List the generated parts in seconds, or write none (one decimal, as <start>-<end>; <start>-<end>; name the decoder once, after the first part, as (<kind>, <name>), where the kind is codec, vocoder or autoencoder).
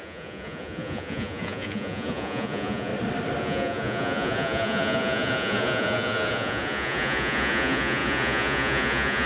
0.0-2.9 (vocoder, Vocos); 3.4-9.3